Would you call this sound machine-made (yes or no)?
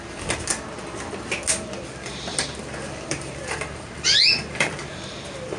no